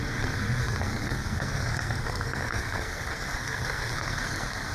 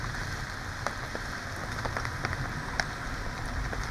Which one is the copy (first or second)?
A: first